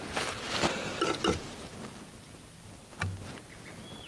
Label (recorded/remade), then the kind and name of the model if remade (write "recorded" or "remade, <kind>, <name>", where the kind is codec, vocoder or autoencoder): recorded